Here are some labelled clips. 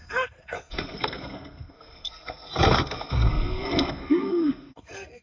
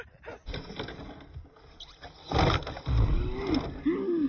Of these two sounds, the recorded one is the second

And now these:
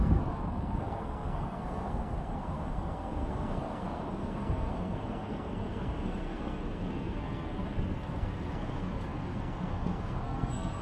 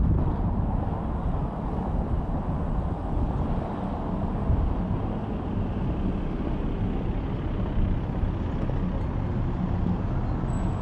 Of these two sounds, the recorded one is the second